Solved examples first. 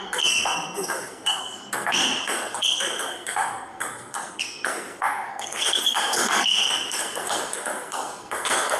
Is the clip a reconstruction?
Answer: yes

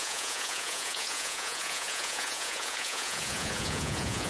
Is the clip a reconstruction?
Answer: yes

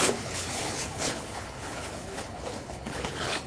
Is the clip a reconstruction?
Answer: yes